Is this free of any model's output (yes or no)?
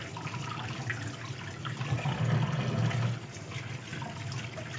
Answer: yes